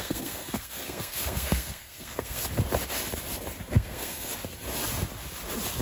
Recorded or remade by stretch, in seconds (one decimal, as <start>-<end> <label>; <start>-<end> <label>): 0.0-2.4 remade; 2.4-3.7 recorded; 3.7-4.3 remade; 4.3-5.8 recorded